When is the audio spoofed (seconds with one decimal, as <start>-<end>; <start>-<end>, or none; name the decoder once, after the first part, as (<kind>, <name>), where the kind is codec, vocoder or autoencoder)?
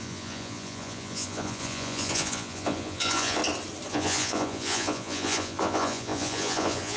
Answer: 0.0-3.4 (vocoder, Vocos); 3.9-7.0